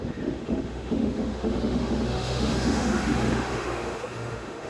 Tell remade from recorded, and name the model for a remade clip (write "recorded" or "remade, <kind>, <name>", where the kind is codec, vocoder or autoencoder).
remade, autoencoder, DAC-VAE